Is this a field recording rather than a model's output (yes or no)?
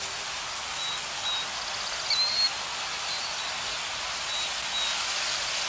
yes